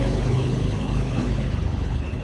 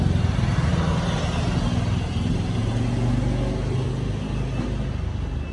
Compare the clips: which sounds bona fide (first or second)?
second